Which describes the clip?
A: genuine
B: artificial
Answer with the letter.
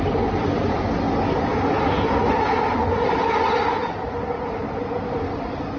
A